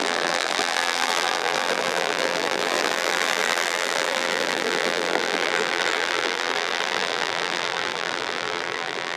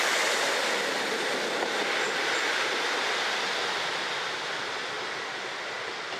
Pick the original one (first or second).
second